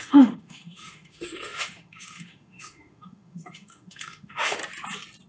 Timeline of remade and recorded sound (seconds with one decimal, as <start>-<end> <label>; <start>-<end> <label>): 0.0-4.6 remade; 4.6-5.3 recorded